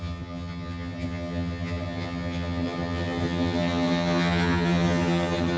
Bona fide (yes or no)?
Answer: no